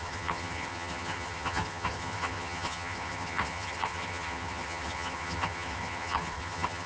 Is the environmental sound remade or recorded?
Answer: remade